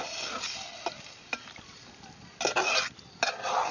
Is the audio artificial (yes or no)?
no